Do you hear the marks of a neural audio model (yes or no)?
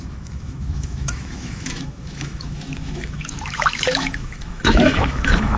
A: yes